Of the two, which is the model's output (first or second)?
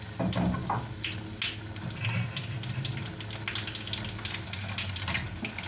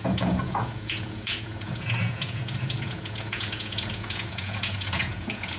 second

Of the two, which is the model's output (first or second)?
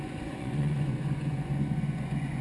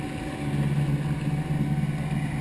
first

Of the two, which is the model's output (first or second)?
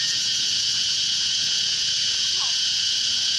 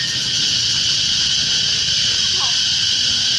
first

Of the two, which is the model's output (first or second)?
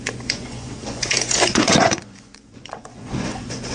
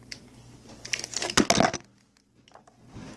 first